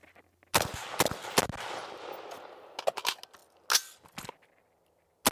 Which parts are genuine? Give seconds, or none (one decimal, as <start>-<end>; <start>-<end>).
0.0-5.3